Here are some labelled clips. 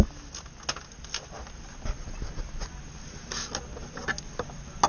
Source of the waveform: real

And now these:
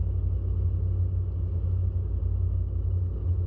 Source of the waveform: real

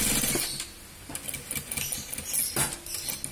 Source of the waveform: real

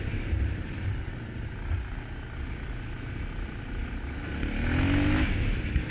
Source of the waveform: real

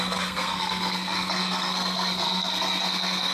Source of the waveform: fake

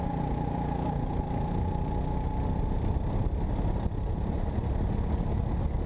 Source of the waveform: real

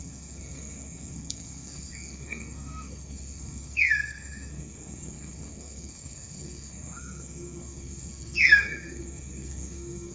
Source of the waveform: fake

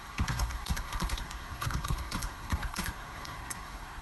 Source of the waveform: fake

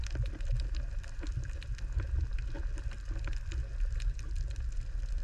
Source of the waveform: real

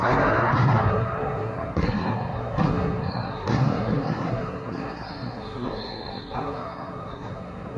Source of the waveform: fake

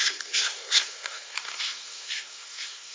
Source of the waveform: fake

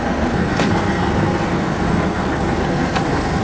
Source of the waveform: fake